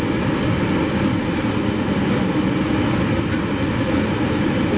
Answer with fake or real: real